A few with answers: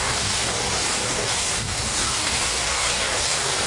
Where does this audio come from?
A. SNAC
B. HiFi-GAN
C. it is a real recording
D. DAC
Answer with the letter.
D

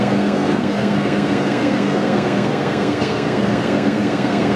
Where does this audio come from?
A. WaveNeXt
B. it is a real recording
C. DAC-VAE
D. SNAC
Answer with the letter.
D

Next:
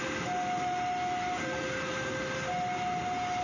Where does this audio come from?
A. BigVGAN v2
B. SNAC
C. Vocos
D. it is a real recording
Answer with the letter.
D